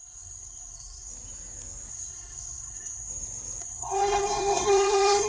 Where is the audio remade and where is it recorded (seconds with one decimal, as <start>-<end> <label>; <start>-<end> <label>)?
0.0-1.1 remade; 1.1-1.9 recorded; 1.9-3.1 remade; 3.1-3.6 recorded; 3.6-5.3 remade